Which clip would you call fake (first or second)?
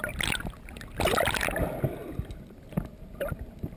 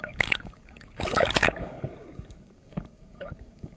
second